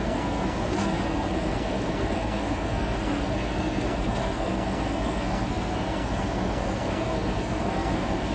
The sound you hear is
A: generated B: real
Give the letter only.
A